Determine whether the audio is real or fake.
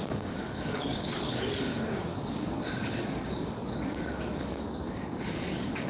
fake